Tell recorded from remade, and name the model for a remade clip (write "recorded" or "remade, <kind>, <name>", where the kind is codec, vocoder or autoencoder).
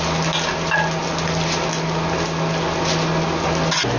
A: recorded